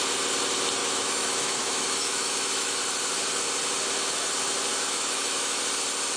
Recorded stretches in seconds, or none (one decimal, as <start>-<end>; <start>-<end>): 0.0-0.8; 2.8-4.7; 5.6-6.2